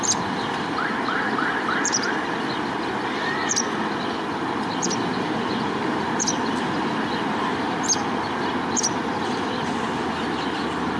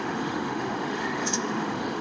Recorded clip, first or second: first